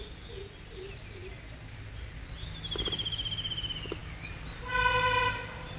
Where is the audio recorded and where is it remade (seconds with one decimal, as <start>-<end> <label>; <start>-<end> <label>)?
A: 0.0-5.8 recorded